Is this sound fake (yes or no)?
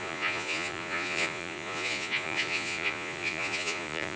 yes